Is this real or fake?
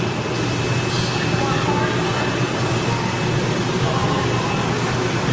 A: real